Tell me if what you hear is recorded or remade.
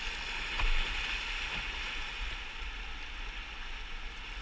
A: recorded